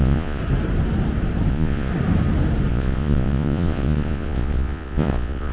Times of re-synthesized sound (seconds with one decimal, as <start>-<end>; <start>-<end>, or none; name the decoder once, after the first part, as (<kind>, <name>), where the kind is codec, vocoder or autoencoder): 0.0-0.4 (vocoder, Vocos); 1.5-1.9; 2.7-5.5